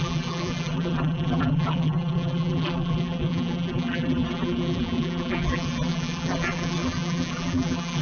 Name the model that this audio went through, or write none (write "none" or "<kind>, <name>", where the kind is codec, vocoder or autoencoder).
vocoder, BigVGAN v2